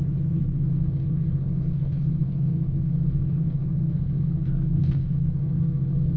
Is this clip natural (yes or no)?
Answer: no